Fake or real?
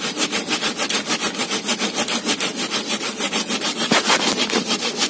real